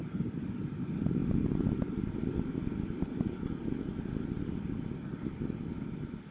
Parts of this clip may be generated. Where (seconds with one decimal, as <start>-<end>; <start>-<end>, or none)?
none